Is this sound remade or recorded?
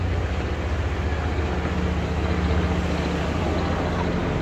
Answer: recorded